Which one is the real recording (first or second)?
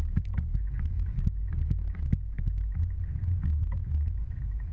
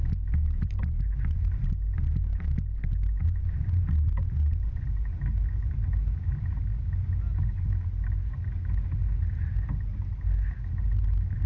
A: second